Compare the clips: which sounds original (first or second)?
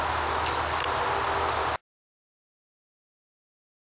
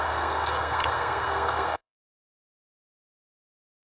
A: first